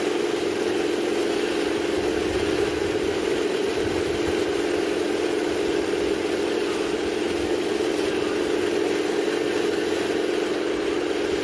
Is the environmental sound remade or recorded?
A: remade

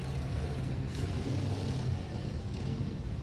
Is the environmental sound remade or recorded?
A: remade